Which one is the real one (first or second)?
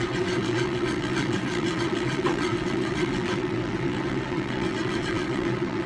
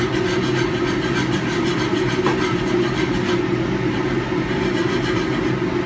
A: second